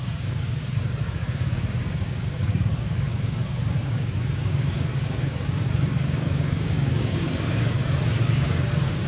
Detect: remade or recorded remade